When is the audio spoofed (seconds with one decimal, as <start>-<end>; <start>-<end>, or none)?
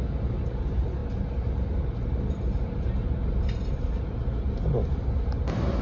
none